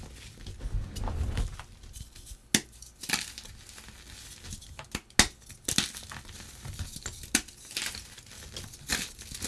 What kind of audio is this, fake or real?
real